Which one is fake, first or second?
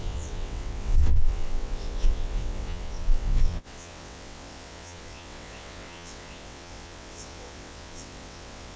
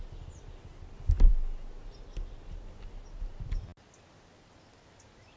first